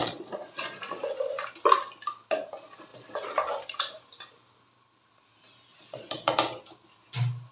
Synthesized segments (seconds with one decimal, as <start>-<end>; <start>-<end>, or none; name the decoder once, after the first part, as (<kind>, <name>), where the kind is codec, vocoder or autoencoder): 0.0-0.8 (vocoder, Vocos); 5.7-6.3